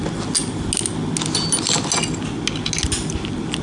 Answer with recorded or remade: recorded